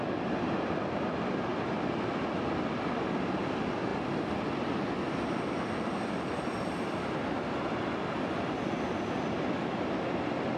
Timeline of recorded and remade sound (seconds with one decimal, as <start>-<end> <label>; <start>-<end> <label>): 0.0-10.6 recorded